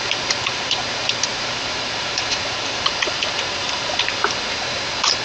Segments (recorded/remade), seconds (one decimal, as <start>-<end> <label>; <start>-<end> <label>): 0.0-1.3 recorded; 1.3-3.2 remade; 3.2-3.6 recorded; 3.6-4.3 remade; 4.3-5.2 recorded